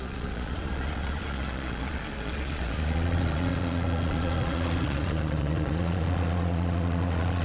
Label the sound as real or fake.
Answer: fake